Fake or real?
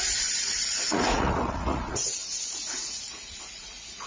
fake